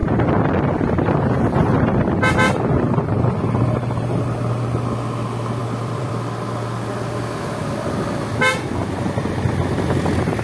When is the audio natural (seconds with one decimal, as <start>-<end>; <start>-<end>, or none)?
0.0-5.6; 6.1-10.4